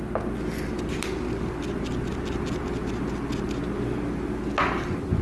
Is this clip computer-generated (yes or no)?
no